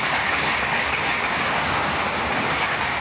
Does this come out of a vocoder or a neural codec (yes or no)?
yes